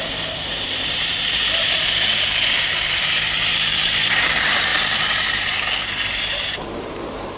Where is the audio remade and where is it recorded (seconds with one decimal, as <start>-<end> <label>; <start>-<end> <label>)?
0.0-4.7 remade; 4.7-6.1 recorded; 6.1-7.4 remade

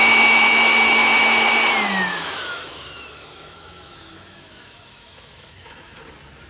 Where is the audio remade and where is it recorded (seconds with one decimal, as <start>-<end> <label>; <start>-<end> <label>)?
0.0-1.7 remade; 1.7-2.1 recorded; 2.1-6.0 remade; 6.0-6.5 recorded